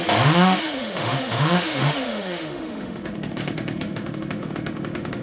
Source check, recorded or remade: remade